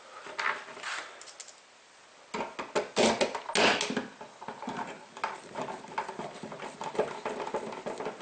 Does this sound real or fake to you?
real